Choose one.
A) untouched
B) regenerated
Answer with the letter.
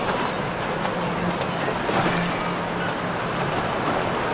A